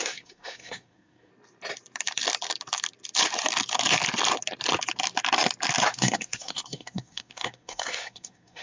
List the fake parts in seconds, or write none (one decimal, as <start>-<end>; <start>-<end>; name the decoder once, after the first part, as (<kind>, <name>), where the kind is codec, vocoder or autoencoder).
0.0-1.3 (codec, SNAC); 5.9-8.6